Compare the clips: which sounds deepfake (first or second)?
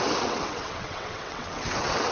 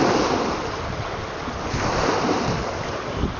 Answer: first